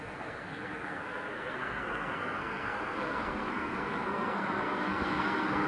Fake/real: fake